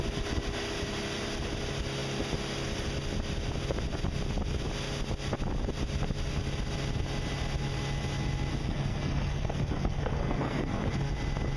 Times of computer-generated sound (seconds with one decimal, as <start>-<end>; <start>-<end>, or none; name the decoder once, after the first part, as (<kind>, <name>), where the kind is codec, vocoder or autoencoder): 8.5-11.1 (codec, SNAC)